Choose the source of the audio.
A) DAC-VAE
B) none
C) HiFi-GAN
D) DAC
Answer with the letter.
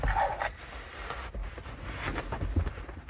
B